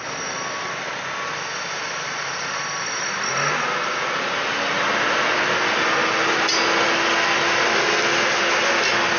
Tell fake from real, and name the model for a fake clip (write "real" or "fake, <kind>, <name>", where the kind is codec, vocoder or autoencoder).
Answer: real